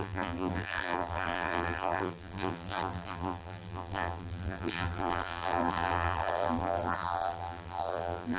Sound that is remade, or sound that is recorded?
remade